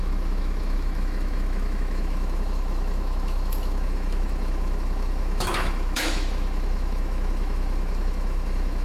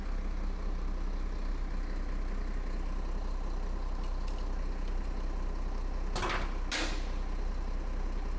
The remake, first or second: first